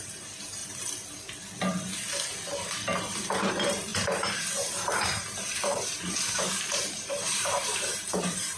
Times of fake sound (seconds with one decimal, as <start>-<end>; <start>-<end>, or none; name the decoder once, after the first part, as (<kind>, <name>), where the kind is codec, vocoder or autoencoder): 0.0-0.6 (vocoder, BigVGAN v2); 3.5-8.6